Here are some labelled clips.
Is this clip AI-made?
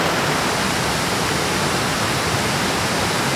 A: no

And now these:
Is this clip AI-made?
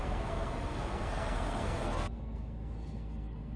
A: yes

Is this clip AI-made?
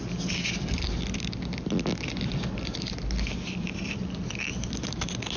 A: no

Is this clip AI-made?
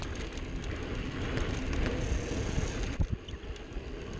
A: no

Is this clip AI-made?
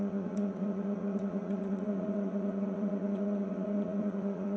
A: yes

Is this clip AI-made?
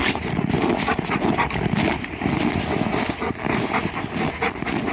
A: no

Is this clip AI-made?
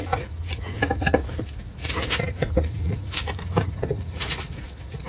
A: yes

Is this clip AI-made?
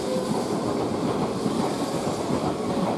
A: no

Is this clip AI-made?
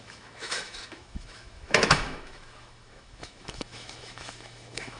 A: yes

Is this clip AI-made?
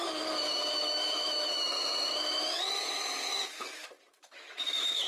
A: yes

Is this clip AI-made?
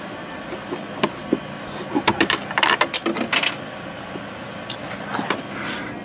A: no